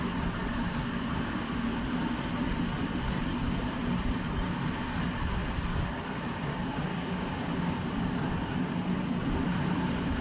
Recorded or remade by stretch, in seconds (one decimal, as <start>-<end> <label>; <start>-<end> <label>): 0.0-6.9 recorded; 6.9-7.5 remade; 7.5-10.2 recorded